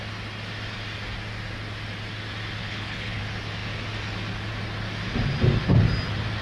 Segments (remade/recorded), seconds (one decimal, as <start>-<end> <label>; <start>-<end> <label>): 0.0-2.6 recorded; 2.6-3.2 remade; 3.2-6.4 recorded